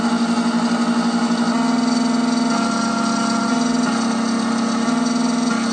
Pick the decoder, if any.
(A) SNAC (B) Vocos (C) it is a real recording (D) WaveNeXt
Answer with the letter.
C